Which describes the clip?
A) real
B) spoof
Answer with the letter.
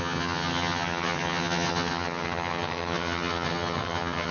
B